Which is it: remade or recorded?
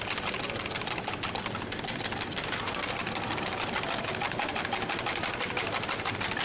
recorded